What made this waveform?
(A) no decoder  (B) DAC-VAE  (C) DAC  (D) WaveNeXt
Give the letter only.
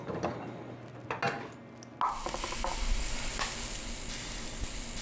A